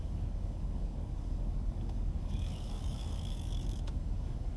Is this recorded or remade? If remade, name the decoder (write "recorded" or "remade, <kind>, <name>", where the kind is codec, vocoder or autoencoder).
remade, codec, DAC